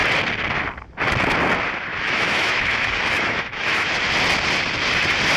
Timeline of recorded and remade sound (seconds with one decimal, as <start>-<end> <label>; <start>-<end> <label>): 0.0-1.9 recorded; 1.9-3.9 remade; 3.9-5.4 recorded